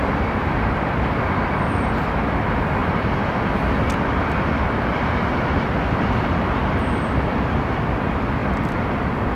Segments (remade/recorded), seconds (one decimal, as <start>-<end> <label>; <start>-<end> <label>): 0.0-2.8 recorded; 2.8-7.1 remade; 7.1-8.4 recorded; 8.4-9.3 remade